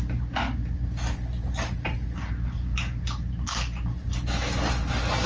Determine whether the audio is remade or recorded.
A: recorded